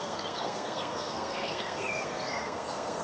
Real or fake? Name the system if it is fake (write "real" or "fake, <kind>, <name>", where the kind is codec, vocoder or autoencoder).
fake, codec, SNAC